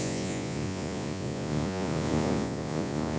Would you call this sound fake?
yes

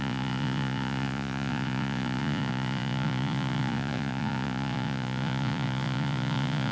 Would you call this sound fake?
yes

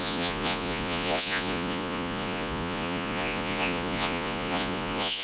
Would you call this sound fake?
yes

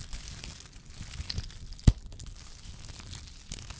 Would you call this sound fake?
no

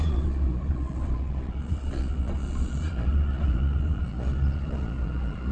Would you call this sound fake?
yes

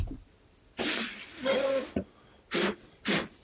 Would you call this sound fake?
no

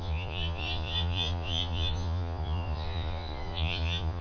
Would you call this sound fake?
yes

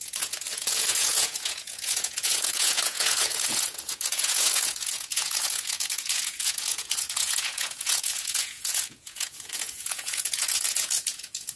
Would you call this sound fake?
yes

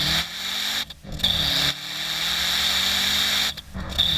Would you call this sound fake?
no